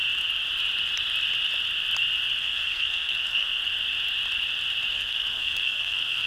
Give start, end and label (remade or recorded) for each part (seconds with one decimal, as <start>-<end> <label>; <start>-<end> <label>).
0.0-2.4 recorded; 2.4-3.6 remade; 3.6-4.9 recorded; 4.9-6.3 remade